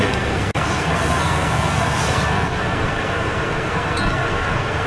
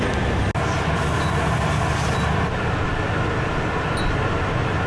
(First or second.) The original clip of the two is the second